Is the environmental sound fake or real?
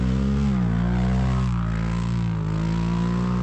real